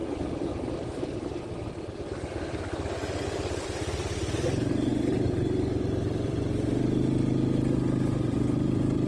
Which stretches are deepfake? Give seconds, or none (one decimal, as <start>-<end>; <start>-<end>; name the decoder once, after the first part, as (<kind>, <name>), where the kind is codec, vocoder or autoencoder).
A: 0.0-0.5 (vocoder, BigVGAN v2); 4.9-6.4